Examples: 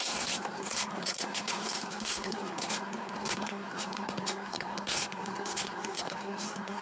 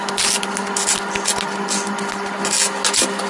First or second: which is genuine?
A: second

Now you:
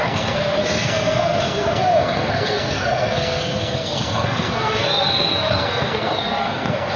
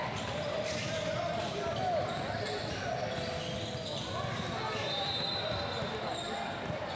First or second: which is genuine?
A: second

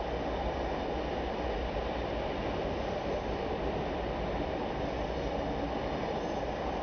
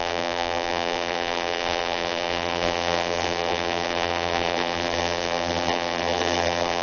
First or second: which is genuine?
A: first